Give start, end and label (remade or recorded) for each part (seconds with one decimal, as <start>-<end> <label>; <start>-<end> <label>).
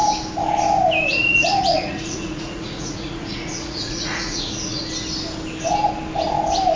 0.0-1.1 recorded; 1.1-4.8 remade; 4.8-6.8 recorded